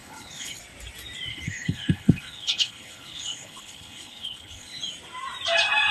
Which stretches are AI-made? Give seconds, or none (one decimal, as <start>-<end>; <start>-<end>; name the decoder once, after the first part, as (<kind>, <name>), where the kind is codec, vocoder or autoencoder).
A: 0.0-0.6 (codec, HILCodec); 1.3-4.8